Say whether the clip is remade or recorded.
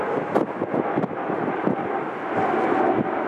recorded